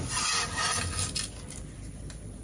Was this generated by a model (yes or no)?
no